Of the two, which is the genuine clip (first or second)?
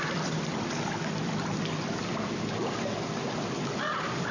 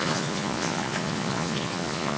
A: first